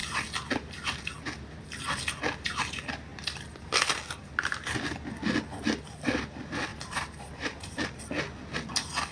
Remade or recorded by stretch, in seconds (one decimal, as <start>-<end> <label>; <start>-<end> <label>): 0.0-6.7 recorded; 6.7-8.0 remade; 8.0-9.1 recorded